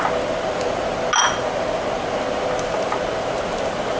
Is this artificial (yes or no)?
no